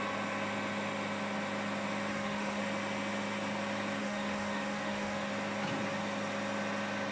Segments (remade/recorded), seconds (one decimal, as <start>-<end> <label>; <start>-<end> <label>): 0.0-2.1 recorded; 2.1-2.6 remade; 2.6-4.0 recorded; 4.0-5.3 remade; 5.3-7.1 recorded